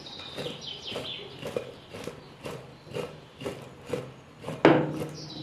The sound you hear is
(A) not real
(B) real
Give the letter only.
B